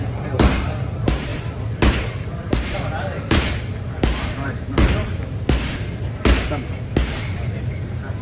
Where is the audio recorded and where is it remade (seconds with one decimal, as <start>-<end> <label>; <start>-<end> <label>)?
0.0-1.3 remade; 1.3-2.3 recorded; 2.3-5.0 remade; 5.0-7.1 recorded; 7.1-8.2 remade